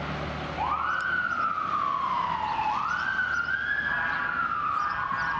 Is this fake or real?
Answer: real